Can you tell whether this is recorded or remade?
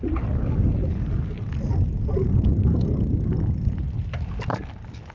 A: recorded